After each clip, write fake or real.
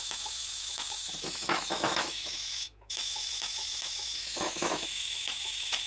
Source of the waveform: fake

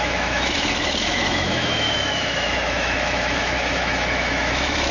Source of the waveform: fake